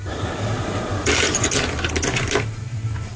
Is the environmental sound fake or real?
real